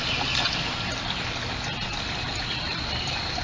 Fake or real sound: real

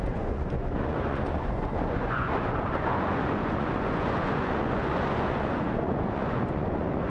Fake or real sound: fake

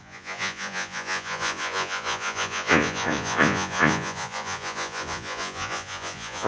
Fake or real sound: fake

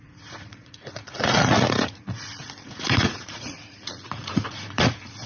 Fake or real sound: fake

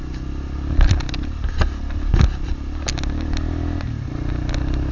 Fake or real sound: real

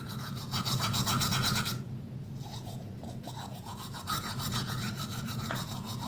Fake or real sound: fake